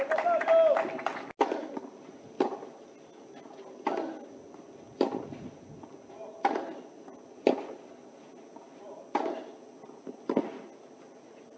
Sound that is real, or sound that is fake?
real